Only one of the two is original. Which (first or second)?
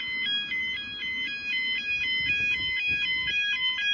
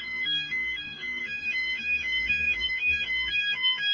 first